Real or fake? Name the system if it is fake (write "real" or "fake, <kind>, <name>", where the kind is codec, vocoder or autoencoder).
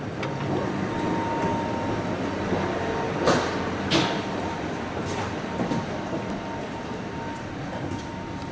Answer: real